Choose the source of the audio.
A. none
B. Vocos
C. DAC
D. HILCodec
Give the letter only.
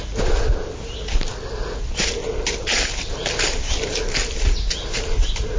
A